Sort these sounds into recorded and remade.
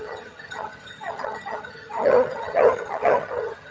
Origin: remade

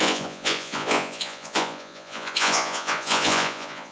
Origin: remade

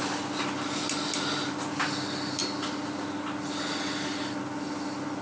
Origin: recorded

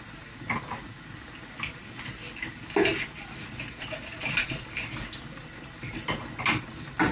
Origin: recorded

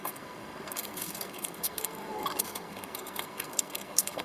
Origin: remade